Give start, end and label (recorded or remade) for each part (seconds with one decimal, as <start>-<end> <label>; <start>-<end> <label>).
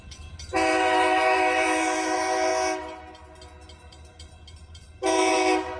0.0-2.5 remade; 2.5-3.8 recorded; 3.8-5.8 remade